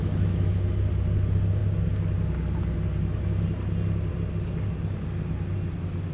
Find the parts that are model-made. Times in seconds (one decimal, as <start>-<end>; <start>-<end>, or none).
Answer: 0.0-0.6